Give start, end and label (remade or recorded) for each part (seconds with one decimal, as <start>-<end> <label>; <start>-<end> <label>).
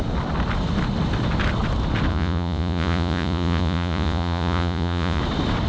0.0-2.1 recorded; 2.1-5.2 remade; 5.2-5.7 recorded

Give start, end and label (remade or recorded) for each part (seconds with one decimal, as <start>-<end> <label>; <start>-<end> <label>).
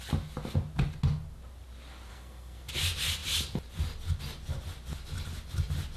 0.0-2.1 recorded; 2.1-2.7 remade; 2.7-6.0 recorded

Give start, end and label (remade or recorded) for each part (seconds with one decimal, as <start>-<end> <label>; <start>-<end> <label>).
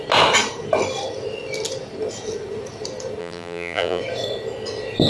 0.0-3.2 recorded; 3.2-4.0 remade; 4.0-5.1 recorded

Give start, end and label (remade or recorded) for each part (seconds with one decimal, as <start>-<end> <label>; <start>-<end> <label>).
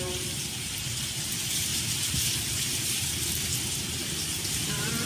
0.0-5.1 remade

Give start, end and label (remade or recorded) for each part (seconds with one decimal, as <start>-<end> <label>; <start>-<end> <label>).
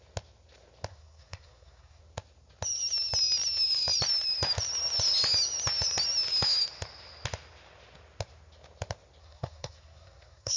0.0-0.9 recorded; 0.9-2.0 remade; 2.0-9.2 recorded; 9.2-10.6 remade